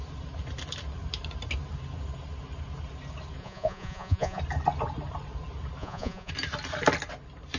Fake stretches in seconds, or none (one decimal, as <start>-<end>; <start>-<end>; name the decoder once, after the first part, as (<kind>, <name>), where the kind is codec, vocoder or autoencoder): 3.4-4.4 (vocoder, Vocos); 5.8-6.3